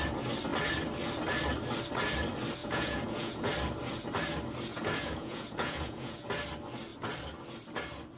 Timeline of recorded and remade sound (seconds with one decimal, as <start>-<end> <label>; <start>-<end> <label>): 0.0-2.6 recorded; 2.6-3.5 remade; 3.5-4.7 recorded; 4.7-6.3 remade; 6.3-8.2 recorded